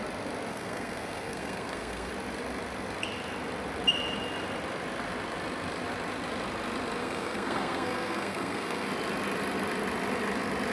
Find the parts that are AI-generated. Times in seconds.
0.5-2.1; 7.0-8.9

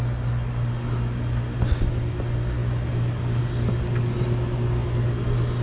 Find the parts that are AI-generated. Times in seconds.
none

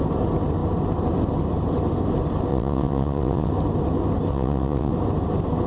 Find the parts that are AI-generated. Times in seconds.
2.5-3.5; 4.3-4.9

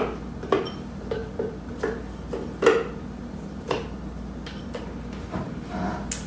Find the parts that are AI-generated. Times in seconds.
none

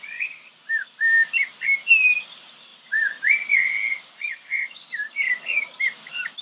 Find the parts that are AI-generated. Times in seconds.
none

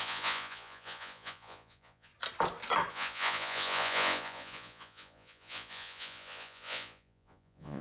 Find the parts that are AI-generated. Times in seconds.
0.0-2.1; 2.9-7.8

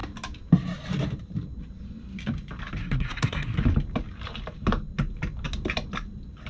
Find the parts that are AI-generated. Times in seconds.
2.8-3.6

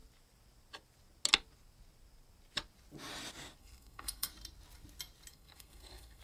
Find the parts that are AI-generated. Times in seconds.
3.6-4.3; 5.3-6.2